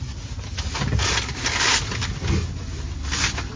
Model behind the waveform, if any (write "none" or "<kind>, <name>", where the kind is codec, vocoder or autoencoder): none